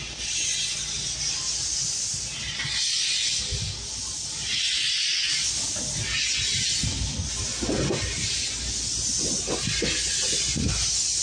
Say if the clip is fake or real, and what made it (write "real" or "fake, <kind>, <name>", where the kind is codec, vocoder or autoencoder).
real